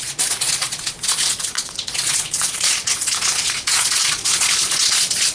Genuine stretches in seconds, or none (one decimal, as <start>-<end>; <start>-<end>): none